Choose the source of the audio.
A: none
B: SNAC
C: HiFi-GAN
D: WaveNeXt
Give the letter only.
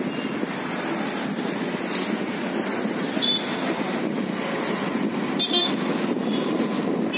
A